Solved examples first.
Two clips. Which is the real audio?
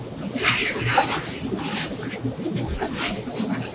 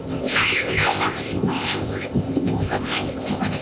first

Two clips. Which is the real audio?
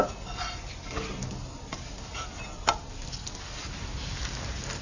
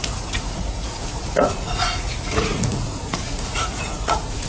first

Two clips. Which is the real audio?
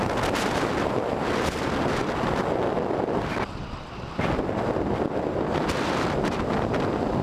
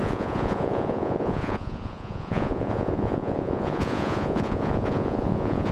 first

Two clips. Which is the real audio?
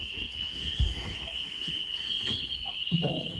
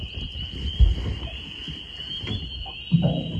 second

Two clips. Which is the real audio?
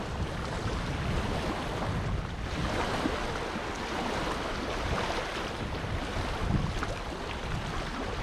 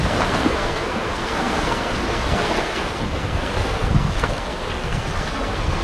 first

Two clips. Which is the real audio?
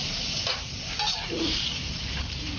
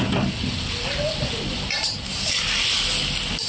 second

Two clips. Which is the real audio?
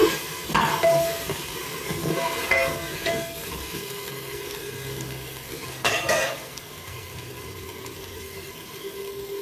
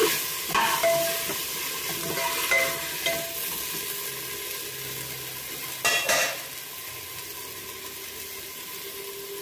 second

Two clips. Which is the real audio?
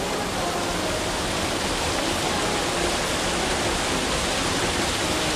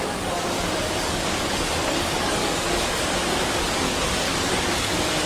first